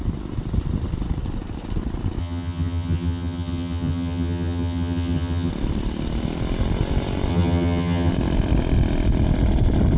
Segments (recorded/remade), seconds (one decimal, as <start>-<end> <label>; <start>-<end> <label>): 0.0-2.2 recorded; 2.2-5.5 remade; 5.5-7.3 recorded; 7.3-8.1 remade; 8.1-10.0 recorded